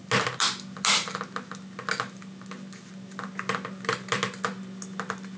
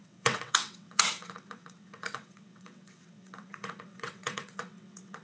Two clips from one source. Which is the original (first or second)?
first